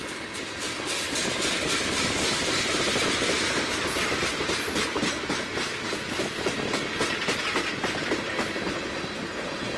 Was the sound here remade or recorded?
recorded